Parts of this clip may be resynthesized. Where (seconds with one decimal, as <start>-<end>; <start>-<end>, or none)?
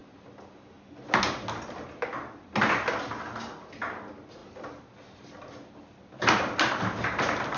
none